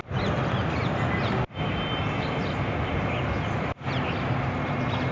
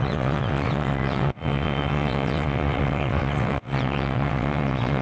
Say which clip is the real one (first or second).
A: first